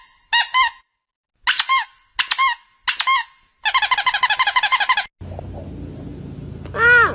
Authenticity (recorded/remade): recorded